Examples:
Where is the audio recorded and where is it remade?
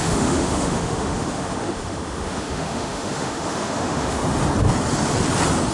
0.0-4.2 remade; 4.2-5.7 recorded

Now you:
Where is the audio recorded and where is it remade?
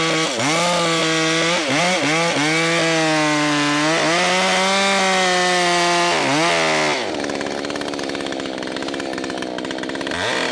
0.0-10.5 recorded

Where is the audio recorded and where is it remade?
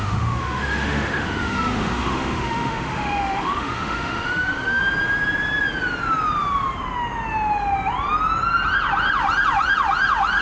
0.0-4.8 remade; 4.8-10.4 recorded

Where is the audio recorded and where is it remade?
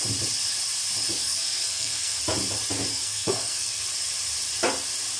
0.0-1.2 recorded; 1.2-2.2 remade; 2.2-2.9 recorded; 2.9-3.8 remade; 3.8-5.2 recorded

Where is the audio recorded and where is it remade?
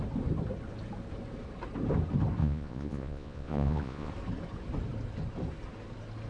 0.0-2.4 recorded; 2.4-4.1 remade; 4.1-6.3 recorded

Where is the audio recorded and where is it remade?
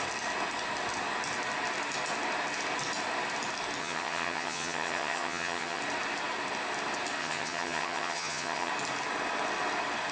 0.0-3.8 recorded; 3.8-5.8 remade; 5.8-7.2 recorded; 7.2-8.7 remade; 8.7-10.1 recorded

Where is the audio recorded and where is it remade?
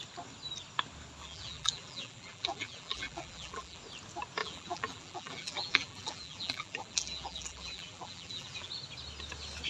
0.0-1.2 recorded; 1.2-3.8 remade; 3.8-4.4 recorded; 4.4-8.7 remade; 8.7-9.7 recorded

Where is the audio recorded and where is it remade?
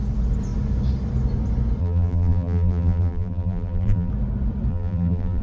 0.0-1.8 recorded; 1.8-4.1 remade; 4.1-4.7 recorded; 4.7-5.4 remade